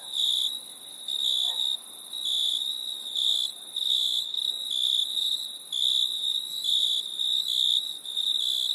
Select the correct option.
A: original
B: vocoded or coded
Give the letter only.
A